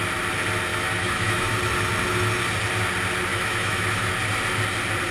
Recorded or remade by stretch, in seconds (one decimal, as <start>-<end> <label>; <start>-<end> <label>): 0.0-0.7 recorded; 0.7-1.5 remade; 1.5-3.3 recorded; 3.3-4.1 remade; 4.1-5.1 recorded